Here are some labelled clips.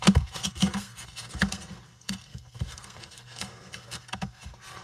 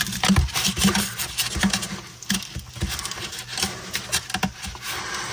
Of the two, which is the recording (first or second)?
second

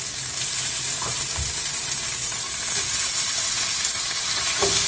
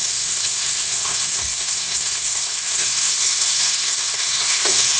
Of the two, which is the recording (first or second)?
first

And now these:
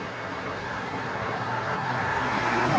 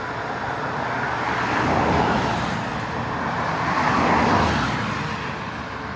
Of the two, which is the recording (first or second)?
second